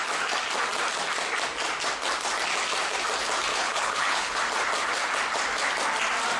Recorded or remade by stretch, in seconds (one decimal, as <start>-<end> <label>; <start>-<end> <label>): 0.0-3.5 recorded; 3.5-4.4 remade; 4.4-6.4 recorded